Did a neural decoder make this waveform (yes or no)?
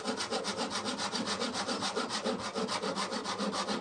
yes